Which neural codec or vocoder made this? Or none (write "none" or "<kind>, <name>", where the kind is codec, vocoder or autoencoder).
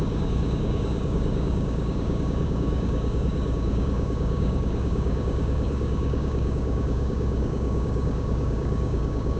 codec, DAC